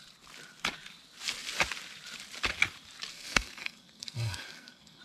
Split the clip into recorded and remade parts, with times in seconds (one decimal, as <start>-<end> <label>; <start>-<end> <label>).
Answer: 0.0-3.1 recorded; 3.1-5.0 remade